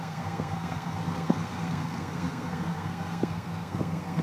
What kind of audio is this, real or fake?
fake